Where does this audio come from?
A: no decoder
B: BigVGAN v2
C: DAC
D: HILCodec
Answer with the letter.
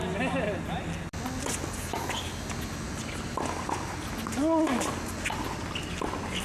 A